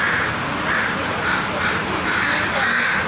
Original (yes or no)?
yes